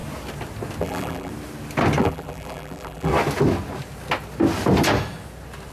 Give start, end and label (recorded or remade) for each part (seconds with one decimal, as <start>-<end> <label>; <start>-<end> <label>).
0.0-0.8 recorded; 0.8-1.3 remade; 1.3-2.0 recorded; 2.0-3.1 remade; 3.1-5.7 recorded